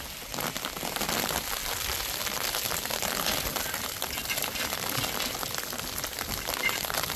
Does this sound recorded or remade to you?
recorded